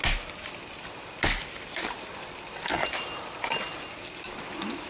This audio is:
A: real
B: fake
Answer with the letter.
A